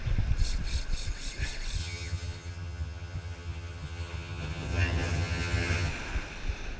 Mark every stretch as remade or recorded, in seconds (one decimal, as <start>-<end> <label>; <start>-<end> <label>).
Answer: 0.0-1.8 recorded; 1.8-5.9 remade; 5.9-6.8 recorded